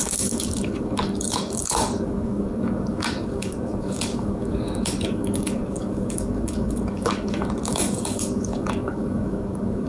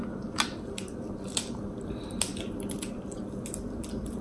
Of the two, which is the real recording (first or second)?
second